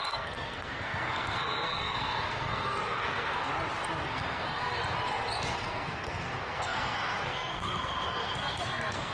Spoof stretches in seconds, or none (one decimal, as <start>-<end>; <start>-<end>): 0.0-3.5; 4.0-4.8; 5.5-9.1